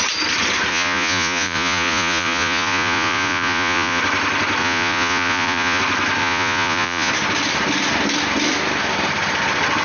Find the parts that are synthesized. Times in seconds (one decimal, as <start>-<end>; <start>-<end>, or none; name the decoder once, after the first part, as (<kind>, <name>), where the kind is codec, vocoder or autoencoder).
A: 0.7-4.0 (vocoder, Vocos); 4.6-5.8; 6.2-7.1